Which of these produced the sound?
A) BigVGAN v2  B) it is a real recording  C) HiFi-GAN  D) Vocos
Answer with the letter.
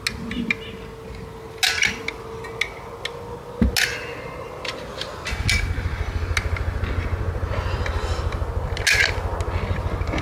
B